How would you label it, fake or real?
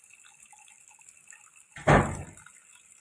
real